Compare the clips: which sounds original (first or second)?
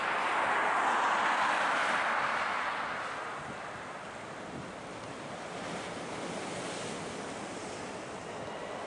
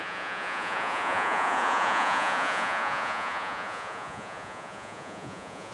first